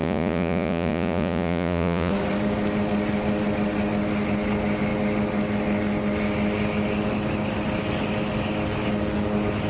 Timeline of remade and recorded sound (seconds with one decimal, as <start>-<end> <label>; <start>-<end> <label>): 0.0-2.1 remade; 2.1-9.7 recorded